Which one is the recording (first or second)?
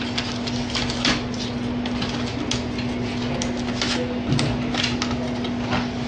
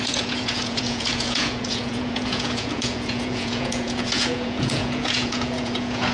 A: first